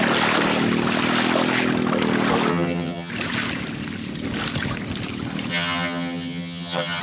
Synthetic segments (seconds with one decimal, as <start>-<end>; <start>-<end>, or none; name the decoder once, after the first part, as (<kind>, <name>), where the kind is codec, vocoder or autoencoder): 2.5-3.1 (vocoder, HiFi-GAN); 5.5-7.0